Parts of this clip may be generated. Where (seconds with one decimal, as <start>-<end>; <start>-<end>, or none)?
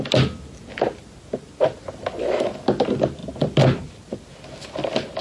none